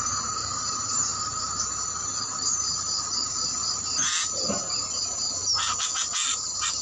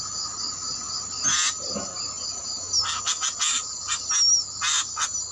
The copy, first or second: first